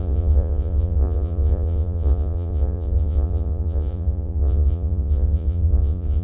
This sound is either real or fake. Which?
fake